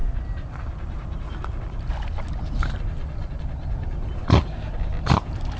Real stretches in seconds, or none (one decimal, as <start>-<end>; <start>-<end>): 0.0-5.6